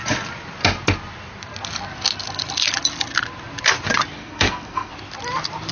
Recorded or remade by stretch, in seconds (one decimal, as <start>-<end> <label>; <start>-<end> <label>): 0.0-4.2 recorded; 4.2-4.9 remade; 4.9-5.7 recorded